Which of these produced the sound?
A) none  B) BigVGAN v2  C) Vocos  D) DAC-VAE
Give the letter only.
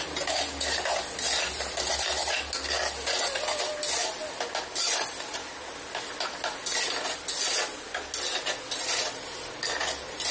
A